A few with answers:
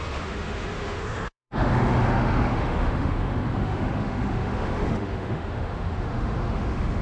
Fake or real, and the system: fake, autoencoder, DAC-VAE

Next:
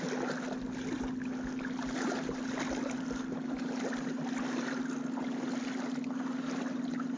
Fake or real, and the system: real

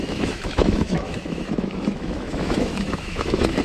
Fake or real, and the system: fake, autoencoder, DAC-VAE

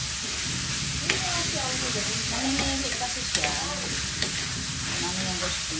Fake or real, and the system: real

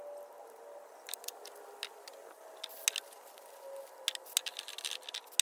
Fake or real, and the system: real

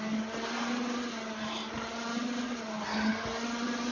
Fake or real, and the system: real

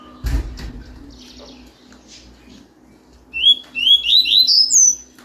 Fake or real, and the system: real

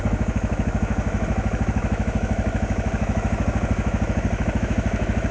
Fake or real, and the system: fake, autoencoder, DAC-VAE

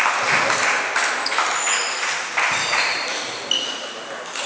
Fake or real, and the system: real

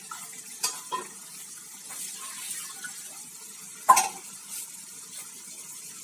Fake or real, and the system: real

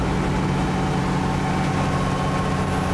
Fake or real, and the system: real